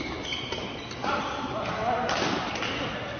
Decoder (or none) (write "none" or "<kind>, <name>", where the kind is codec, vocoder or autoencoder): none